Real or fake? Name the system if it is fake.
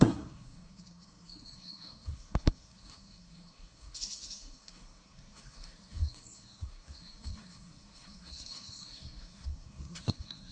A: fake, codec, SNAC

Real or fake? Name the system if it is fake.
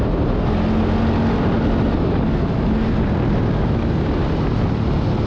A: real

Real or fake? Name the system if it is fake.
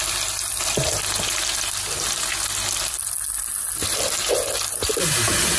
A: real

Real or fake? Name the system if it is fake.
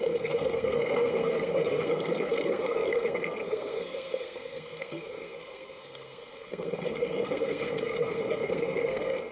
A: fake, codec, SNAC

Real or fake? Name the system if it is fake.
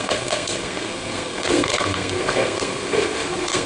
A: fake, codec, SNAC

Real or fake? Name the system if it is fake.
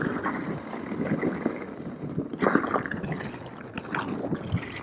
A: real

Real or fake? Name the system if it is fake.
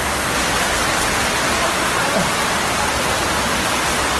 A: real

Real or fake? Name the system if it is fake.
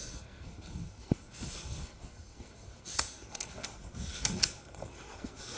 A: fake, codec, SNAC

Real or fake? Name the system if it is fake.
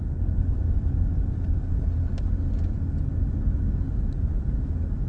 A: real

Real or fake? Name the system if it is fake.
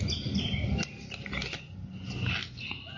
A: real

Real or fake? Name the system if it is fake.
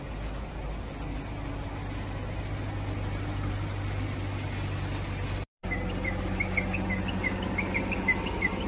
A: real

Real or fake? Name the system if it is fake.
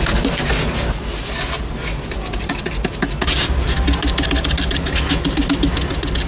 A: real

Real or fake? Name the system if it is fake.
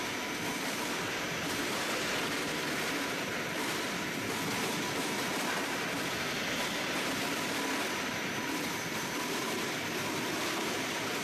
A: real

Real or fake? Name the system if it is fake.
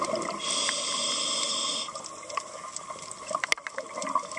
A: real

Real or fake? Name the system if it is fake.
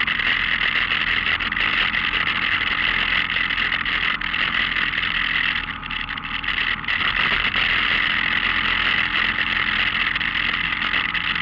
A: real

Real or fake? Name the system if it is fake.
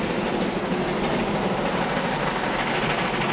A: real